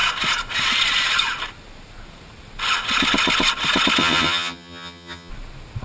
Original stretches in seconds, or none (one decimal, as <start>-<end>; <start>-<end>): 0.0-4.0; 5.3-5.8